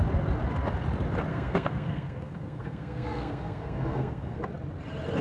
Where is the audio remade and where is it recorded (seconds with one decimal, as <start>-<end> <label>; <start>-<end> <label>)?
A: 0.0-1.3 recorded; 1.3-4.4 remade; 4.4-5.2 recorded